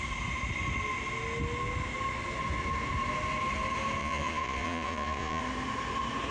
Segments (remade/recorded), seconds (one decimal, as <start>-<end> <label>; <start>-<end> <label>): 0.0-4.0 recorded; 4.0-5.4 remade; 5.4-6.3 recorded